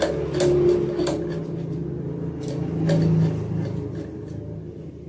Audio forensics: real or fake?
real